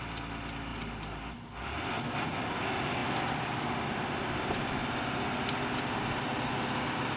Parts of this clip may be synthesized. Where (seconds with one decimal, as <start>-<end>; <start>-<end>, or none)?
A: none